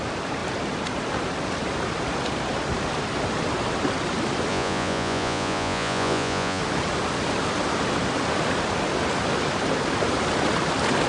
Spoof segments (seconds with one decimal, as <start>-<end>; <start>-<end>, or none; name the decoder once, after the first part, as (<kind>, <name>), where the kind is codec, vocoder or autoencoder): 4.5-6.6 (vocoder, Vocos)